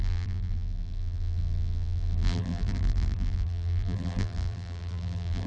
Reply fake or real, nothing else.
fake